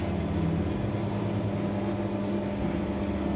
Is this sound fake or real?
real